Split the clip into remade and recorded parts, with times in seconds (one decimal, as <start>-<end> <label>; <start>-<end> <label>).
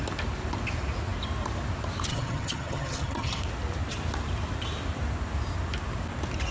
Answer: 0.0-2.1 recorded; 2.1-3.4 remade; 3.4-6.5 recorded